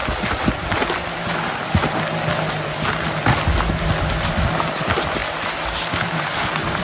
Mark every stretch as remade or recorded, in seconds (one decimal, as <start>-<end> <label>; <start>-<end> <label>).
0.0-6.8 recorded